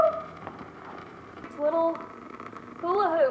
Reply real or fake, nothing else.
fake